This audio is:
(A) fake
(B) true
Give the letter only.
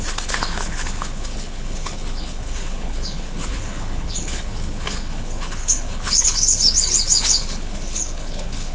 A